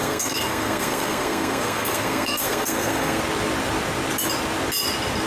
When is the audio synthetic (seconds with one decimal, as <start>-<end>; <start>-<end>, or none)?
0.0-3.2